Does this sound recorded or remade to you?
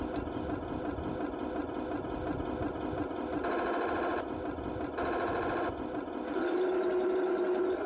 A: recorded